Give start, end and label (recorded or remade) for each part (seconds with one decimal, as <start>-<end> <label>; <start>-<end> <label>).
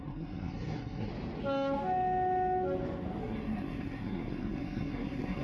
0.0-1.1 remade; 1.1-3.2 recorded; 3.2-5.4 remade